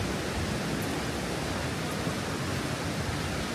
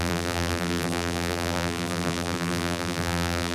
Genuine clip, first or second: first